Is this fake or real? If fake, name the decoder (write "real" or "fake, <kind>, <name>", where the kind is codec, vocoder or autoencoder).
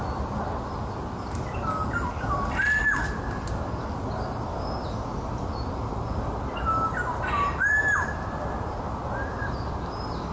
real